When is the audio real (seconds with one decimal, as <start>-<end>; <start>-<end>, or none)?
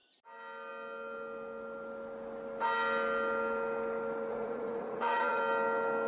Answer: 0.0-4.3; 5.4-6.1